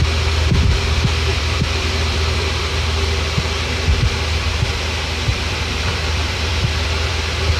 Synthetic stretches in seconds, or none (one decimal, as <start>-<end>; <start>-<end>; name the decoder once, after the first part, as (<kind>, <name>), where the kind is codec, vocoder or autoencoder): 1.3-2.7 (vocoder, BigVGAN v2); 5.3-7.1